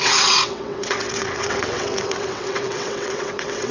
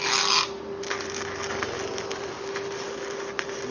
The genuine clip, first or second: second